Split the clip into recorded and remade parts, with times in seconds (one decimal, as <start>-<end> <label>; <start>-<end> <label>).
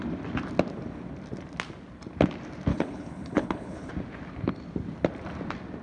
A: 0.0-2.7 recorded; 2.7-3.9 remade; 3.9-5.8 recorded